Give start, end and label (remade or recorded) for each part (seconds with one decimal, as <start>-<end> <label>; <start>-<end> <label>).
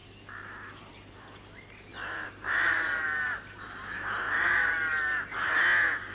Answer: 0.0-1.9 recorded; 1.9-5.6 remade; 5.6-6.1 recorded